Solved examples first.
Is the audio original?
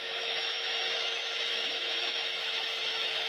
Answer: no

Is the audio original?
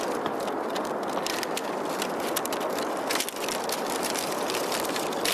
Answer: yes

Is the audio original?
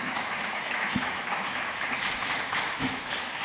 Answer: no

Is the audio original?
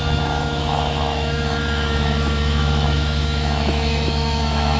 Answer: no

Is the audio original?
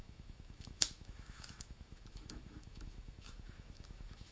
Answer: no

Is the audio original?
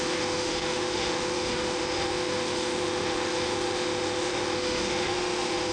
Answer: no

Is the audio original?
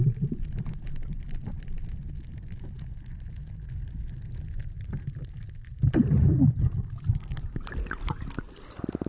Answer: yes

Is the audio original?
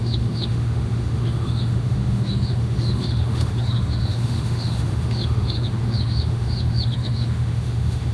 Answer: no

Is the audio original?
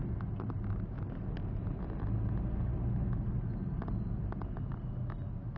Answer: yes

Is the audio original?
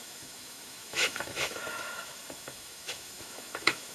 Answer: no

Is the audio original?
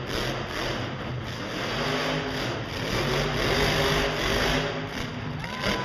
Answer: yes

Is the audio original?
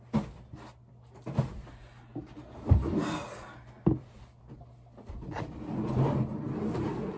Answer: yes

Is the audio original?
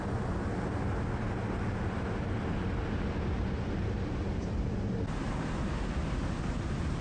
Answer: yes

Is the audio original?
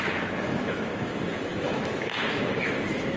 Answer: no